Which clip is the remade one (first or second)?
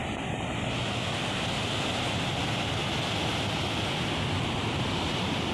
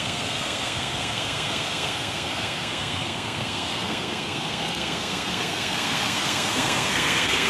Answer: second